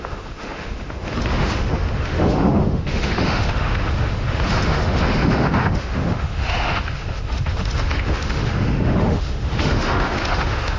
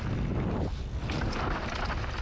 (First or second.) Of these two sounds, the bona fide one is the second